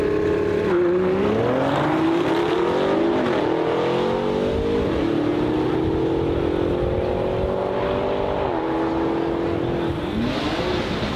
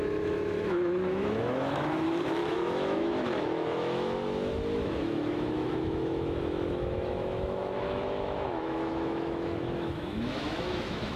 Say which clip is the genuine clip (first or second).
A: first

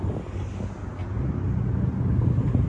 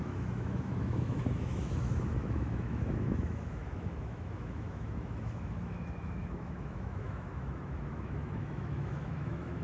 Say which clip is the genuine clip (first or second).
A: first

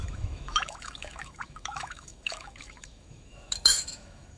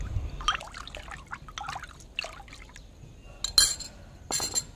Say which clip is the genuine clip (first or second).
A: second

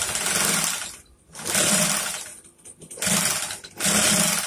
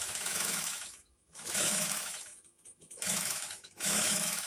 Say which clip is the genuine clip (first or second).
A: first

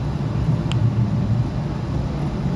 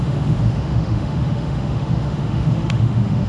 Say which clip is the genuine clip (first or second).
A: first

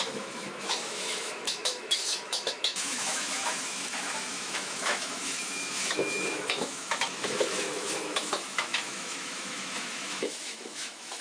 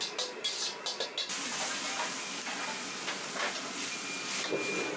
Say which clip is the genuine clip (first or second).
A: second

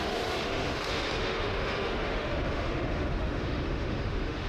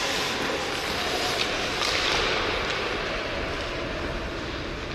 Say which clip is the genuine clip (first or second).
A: second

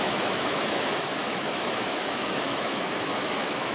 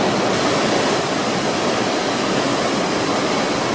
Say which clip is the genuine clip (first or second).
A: second